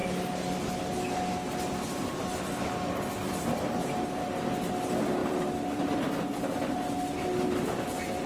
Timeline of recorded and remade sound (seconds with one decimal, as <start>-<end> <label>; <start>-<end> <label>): 0.0-5.2 recorded; 5.2-6.0 remade; 6.0-8.3 recorded